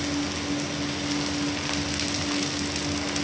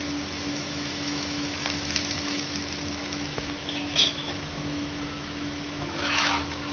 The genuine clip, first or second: first